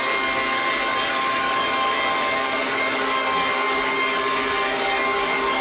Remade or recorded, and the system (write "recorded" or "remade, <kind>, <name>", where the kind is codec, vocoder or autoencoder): remade, codec, DAC